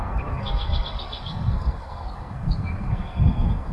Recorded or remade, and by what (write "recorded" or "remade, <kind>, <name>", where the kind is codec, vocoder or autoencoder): remade, codec, SNAC